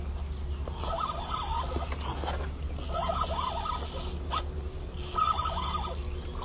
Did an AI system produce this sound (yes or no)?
no